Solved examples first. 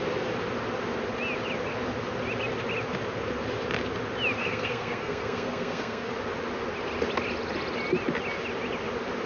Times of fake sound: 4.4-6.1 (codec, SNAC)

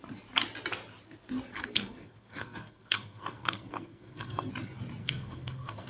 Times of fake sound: 1.5-4.5 (codec, SNAC); 5.0-5.9

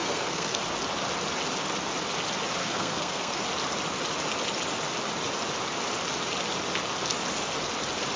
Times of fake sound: 0.0-0.6 (codec, SNAC); 2.6-3.4